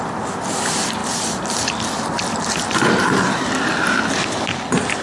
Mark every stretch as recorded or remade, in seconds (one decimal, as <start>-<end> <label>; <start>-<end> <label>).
0.0-1.0 recorded; 1.0-4.0 remade; 4.0-5.0 recorded